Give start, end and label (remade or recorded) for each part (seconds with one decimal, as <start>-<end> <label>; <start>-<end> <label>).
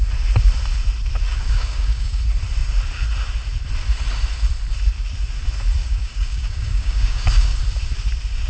0.0-1.3 recorded; 1.3-2.2 remade; 2.2-5.8 recorded; 5.8-7.6 remade; 7.6-8.5 recorded